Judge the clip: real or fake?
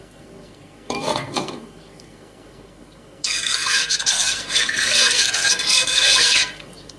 fake